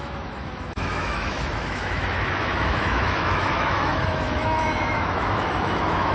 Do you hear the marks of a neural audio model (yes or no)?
yes